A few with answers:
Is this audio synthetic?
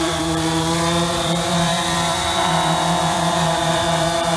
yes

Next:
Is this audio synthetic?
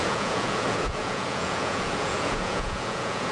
yes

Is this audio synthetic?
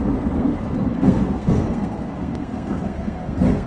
yes